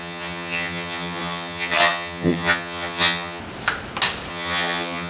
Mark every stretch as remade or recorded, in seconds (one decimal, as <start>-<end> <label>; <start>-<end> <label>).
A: 0.0-3.4 remade; 3.4-4.3 recorded; 4.3-5.1 remade